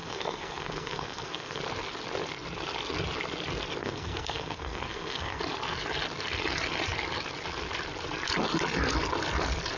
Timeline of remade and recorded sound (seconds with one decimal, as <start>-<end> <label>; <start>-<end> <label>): 0.0-1.6 remade; 1.6-3.8 recorded; 3.8-5.4 remade; 5.4-9.8 recorded